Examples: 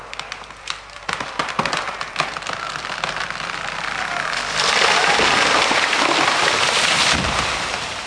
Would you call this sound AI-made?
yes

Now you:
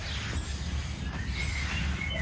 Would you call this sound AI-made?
no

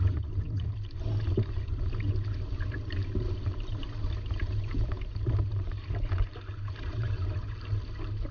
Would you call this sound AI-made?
yes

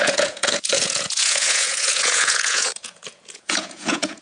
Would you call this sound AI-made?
yes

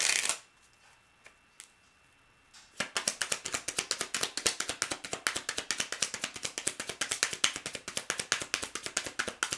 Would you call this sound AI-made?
no